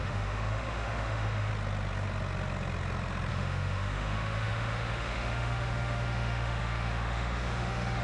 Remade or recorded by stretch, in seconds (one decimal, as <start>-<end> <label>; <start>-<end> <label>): 0.0-1.5 remade; 1.5-3.3 recorded; 3.3-8.0 remade